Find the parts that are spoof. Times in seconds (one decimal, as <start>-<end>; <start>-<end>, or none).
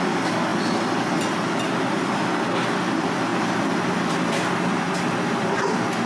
none